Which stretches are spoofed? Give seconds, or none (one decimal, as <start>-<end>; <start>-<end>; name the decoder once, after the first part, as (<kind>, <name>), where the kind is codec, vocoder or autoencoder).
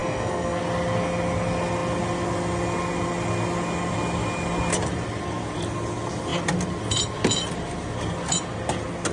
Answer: 0.0-0.6 (codec, SNAC)